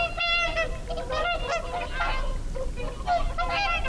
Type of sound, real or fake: real